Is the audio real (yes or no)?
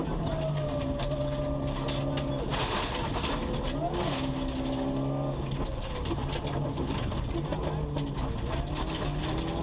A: yes